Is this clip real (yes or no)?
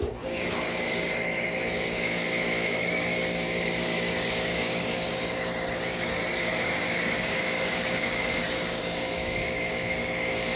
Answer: no